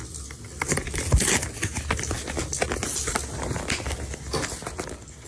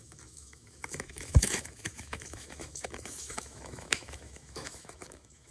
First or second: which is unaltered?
first